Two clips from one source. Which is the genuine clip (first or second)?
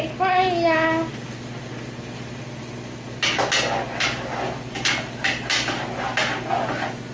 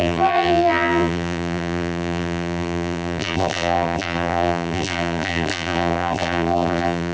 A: first